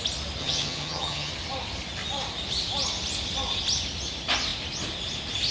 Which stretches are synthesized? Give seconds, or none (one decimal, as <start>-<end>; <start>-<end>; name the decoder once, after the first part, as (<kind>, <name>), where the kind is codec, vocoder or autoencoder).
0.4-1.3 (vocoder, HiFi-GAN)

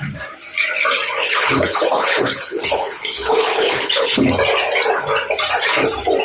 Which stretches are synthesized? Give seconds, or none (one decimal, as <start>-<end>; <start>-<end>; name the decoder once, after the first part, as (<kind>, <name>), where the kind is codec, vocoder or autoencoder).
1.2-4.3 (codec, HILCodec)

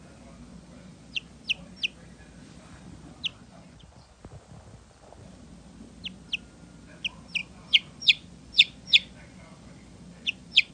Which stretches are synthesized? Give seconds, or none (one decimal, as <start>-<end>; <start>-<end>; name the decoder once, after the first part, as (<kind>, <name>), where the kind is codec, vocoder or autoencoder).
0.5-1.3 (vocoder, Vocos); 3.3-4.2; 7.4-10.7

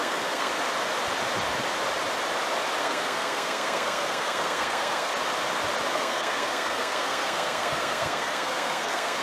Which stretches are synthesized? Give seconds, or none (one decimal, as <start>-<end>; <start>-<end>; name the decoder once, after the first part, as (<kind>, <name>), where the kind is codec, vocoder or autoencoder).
0.0-0.5 (codec, SNAC); 2.8-5.1; 5.9-9.2

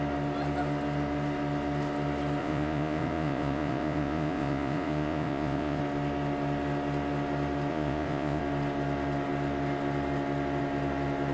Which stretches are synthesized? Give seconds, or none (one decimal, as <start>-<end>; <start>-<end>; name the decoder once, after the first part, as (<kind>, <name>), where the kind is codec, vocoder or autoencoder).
2.4-5.8 (vocoder, Vocos); 7.7-8.4